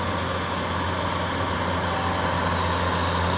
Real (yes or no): yes